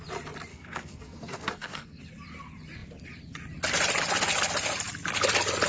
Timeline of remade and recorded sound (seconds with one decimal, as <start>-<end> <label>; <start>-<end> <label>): 0.0-0.5 recorded; 0.5-2.0 remade; 2.0-5.7 recorded